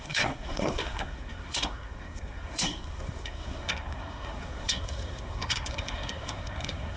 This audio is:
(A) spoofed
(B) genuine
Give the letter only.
A